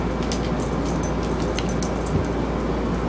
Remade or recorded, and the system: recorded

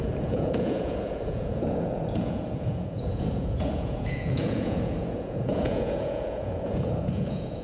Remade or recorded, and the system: remade, vocoder, Vocos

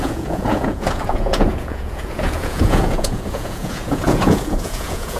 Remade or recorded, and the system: remade, vocoder, Vocos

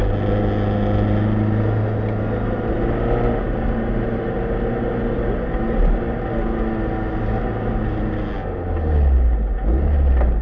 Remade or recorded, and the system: recorded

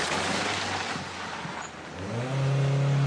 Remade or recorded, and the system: recorded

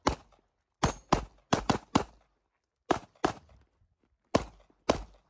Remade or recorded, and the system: recorded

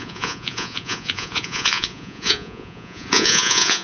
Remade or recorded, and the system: remade, vocoder, Vocos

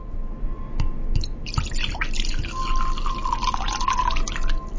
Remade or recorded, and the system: recorded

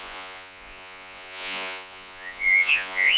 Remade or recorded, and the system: remade, vocoder, Vocos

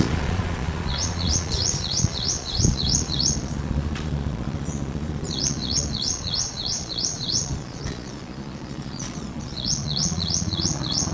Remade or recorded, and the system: remade, vocoder, Vocos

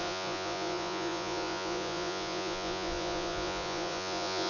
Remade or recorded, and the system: remade, vocoder, Vocos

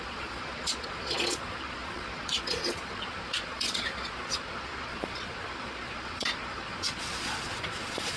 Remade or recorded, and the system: remade, vocoder, Vocos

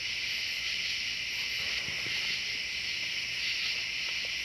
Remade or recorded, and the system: recorded